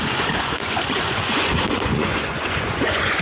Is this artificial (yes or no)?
yes